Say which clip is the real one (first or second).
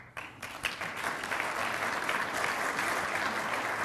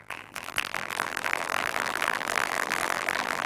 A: first